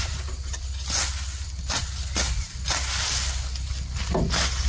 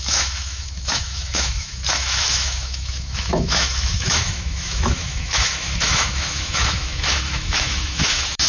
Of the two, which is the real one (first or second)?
first